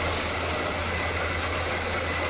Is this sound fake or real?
real